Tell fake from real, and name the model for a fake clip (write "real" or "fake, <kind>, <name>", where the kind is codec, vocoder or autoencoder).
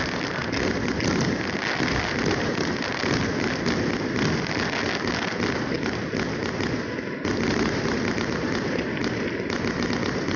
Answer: real